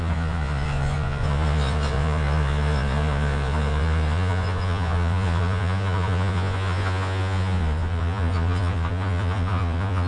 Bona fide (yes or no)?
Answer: no